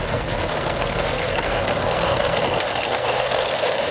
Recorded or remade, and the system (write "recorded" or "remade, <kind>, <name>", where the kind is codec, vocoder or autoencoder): remade, codec, SNAC